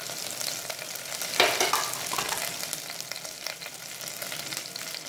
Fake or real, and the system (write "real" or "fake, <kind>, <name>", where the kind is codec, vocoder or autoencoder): real